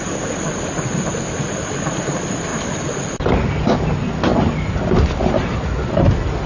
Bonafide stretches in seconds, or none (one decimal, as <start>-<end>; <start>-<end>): 0.0-6.5